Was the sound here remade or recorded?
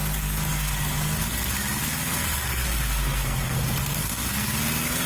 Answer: remade